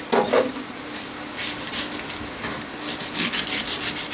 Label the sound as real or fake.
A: real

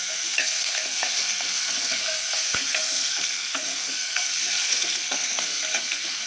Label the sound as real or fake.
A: fake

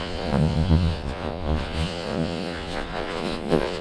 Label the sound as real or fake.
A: fake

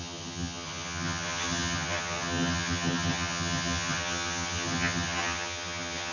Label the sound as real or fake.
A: fake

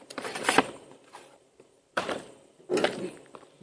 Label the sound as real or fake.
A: fake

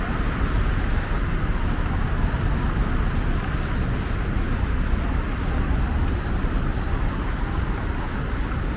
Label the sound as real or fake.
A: real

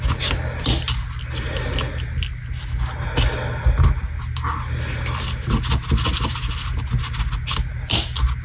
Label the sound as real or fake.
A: real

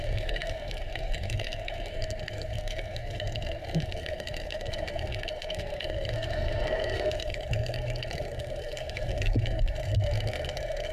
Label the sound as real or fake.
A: fake